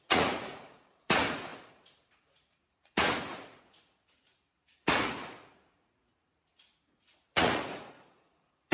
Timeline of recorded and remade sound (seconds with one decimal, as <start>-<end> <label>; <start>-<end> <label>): 0.0-8.7 remade

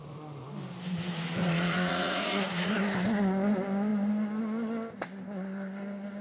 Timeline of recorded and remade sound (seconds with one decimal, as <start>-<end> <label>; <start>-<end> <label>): 0.0-1.4 recorded; 1.4-2.7 remade; 2.7-6.2 recorded

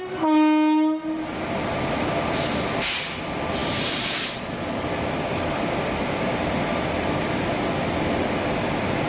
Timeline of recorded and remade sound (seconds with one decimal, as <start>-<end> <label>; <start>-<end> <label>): 0.0-9.1 recorded